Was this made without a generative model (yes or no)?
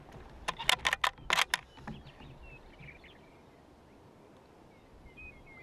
yes